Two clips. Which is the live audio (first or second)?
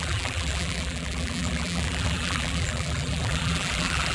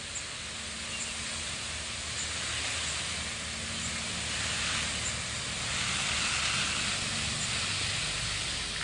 second